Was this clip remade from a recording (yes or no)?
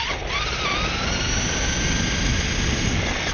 no